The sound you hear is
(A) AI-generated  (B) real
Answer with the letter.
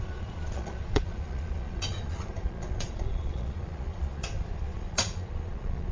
A